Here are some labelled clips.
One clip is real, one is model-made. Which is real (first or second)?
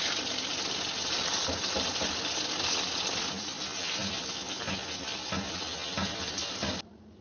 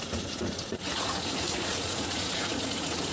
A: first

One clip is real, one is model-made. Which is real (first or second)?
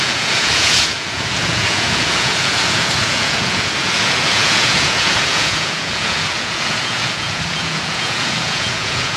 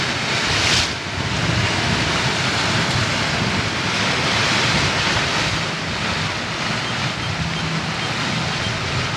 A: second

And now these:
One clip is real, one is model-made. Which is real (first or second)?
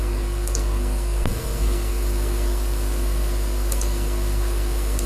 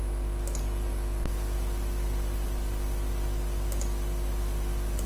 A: second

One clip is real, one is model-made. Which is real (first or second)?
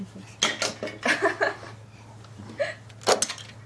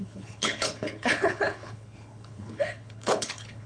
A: first